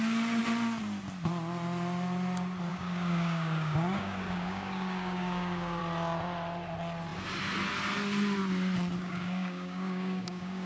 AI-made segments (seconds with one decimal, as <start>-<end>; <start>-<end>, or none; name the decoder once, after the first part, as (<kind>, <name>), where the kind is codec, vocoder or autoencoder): 2.7-5.8 (codec, DAC); 9.0-10.7